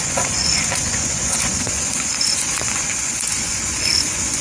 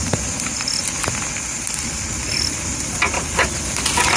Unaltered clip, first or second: second